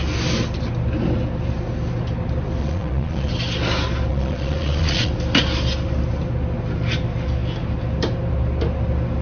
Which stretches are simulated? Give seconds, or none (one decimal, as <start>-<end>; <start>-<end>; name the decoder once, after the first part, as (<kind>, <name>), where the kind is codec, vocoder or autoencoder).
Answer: 2.6-3.3 (vocoder, Vocos); 4.1-5.1